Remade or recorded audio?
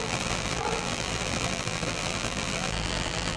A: remade